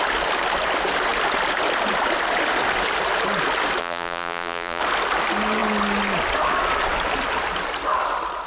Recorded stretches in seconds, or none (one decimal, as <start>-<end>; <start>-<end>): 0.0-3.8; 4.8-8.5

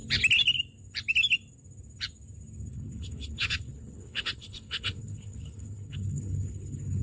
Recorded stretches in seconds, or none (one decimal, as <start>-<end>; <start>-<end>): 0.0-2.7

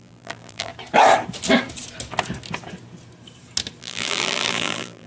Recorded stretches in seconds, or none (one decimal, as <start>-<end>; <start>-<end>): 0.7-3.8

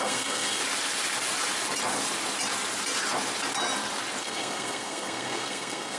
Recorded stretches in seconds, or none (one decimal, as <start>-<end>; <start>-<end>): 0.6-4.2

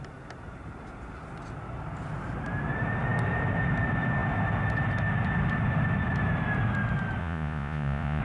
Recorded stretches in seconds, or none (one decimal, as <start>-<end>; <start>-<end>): 0.0-7.2